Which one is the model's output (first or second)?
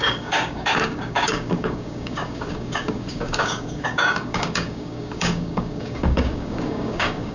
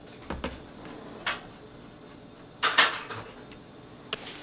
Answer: first